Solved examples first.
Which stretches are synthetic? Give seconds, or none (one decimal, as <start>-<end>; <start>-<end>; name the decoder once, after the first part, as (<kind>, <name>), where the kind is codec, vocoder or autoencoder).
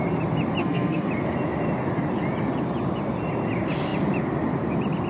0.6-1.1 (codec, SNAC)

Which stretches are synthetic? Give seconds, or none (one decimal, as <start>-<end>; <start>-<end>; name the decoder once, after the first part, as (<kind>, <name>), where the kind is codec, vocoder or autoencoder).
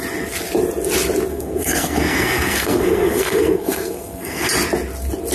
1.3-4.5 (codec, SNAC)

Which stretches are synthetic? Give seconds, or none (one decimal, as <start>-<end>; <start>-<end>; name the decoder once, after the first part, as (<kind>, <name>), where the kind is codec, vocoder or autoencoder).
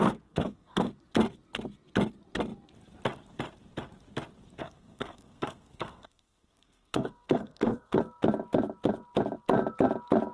0.0-0.9 (codec, SNAC); 4.6-8.0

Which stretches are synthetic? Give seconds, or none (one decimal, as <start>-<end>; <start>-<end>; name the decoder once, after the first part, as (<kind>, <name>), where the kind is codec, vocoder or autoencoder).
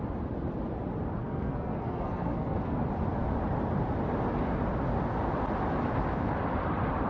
1.2-2.8 (codec, SNAC)